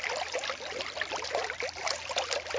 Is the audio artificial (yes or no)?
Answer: no